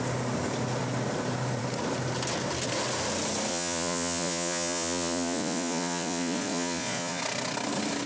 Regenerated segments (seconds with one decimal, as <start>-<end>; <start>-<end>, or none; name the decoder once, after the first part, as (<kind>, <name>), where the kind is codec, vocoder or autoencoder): 3.5-7.2 (vocoder, Vocos)